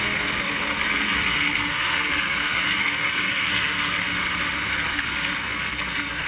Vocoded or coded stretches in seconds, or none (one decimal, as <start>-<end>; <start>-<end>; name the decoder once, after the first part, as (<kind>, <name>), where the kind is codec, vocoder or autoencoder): 0.0-4.0 (codec, SNAC); 4.7-6.3